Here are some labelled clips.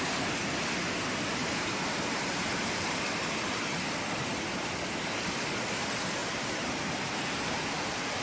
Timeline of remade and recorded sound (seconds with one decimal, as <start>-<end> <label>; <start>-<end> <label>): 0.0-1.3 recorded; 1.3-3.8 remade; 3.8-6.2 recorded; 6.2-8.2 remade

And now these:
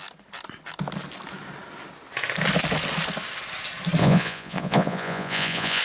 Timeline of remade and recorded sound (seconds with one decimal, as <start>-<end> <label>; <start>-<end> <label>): 0.0-4.0 recorded; 4.0-5.8 remade

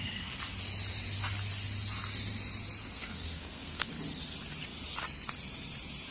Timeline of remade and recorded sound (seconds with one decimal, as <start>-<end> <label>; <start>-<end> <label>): 0.0-2.8 recorded; 2.8-3.9 remade; 3.9-6.1 recorded

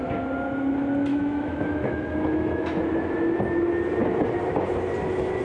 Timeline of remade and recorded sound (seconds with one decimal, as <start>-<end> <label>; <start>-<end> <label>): 0.0-1.1 recorded; 1.1-2.8 remade; 2.8-5.4 recorded

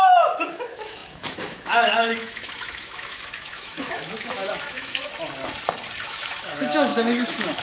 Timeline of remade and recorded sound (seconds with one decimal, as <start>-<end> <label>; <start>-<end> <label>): 0.0-5.1 remade; 5.1-6.0 recorded; 6.0-7.6 remade

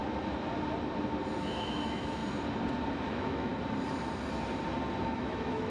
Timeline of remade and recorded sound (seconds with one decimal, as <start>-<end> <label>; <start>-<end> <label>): 0.0-1.4 recorded; 1.4-2.2 remade; 2.2-3.1 recorded; 3.1-3.5 remade; 3.5-5.0 recorded; 5.0-5.7 remade

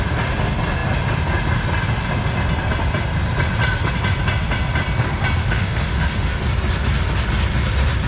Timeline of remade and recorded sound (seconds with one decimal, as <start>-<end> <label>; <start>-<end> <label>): 0.0-5.4 recorded; 5.4-6.3 remade; 6.3-8.1 recorded

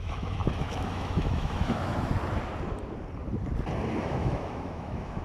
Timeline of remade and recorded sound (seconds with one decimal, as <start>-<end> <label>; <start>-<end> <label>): 0.0-2.1 remade; 2.1-4.0 recorded; 4.0-5.2 remade